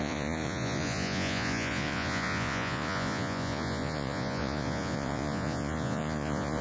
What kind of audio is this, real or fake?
fake